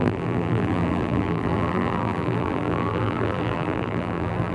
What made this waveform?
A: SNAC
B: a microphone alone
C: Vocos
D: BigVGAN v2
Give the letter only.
D